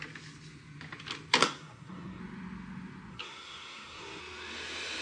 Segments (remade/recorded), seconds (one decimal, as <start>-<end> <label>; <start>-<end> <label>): 0.0-1.4 recorded; 1.4-2.2 remade; 2.2-3.1 recorded; 3.1-4.2 remade; 4.2-5.0 recorded